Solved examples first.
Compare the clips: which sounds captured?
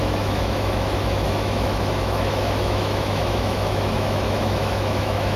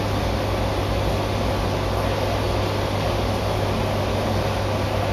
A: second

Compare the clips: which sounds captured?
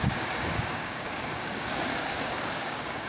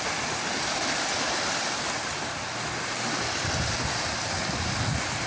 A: second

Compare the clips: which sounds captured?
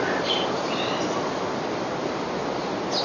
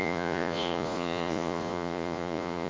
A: first